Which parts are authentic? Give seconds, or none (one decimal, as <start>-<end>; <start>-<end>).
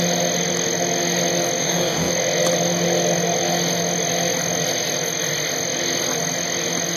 0.0-1.6; 2.1-7.0